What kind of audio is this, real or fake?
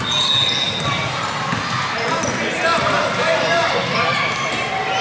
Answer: real